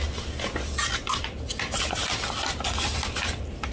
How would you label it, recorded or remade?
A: recorded